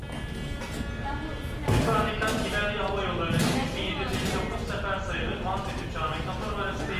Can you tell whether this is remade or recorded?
recorded